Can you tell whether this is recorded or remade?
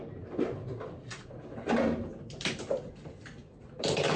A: recorded